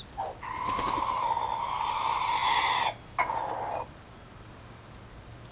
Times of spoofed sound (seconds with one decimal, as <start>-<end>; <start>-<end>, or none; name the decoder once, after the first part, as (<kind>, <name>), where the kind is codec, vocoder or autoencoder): none